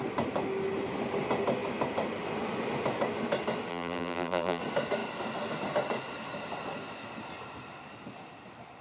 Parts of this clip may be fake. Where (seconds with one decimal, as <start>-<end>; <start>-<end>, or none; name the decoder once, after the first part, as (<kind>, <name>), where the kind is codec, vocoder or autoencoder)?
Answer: 3.7-4.6 (vocoder, BigVGAN v2)

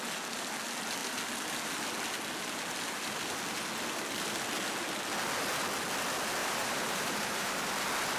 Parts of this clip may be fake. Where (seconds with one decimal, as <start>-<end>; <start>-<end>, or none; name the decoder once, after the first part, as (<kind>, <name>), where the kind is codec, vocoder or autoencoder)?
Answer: 6.4-7.5 (vocoder, BigVGAN v2)

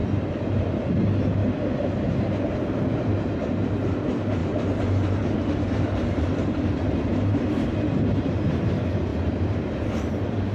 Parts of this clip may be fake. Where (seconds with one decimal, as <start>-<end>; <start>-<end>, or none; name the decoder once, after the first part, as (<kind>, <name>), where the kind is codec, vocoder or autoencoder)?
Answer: 0.0-1.4 (vocoder, BigVGAN v2); 2.6-10.5

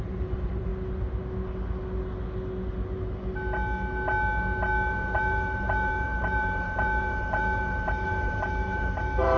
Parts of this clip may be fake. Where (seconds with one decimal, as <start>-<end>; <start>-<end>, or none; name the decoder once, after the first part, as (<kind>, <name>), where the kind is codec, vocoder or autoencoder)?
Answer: 0.0-0.7 (vocoder, BigVGAN v2); 4.9-9.4